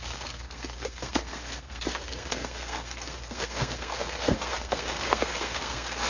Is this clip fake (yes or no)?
yes